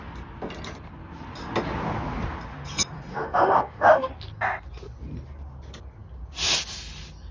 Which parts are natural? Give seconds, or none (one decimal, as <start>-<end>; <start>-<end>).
0.0-3.1; 4.1-7.3